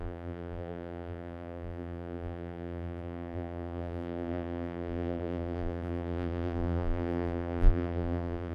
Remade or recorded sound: remade